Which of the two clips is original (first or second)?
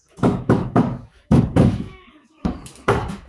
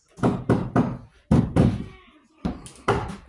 second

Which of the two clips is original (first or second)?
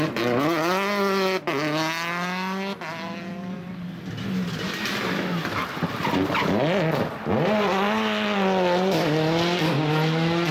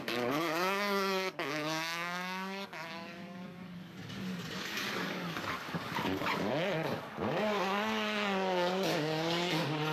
first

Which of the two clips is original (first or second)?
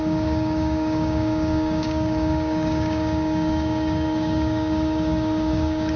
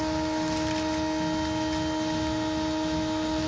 second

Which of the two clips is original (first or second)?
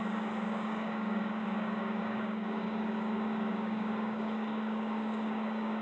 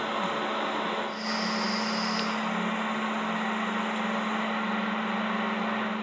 second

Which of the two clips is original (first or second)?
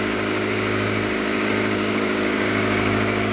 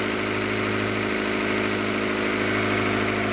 second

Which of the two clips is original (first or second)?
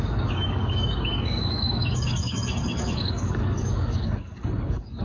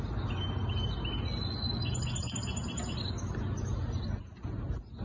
second